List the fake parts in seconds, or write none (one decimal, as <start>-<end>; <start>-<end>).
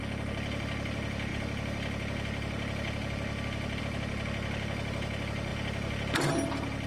none